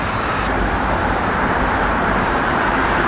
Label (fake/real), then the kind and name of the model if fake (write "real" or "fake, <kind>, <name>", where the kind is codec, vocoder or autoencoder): fake, vocoder, BigVGAN v2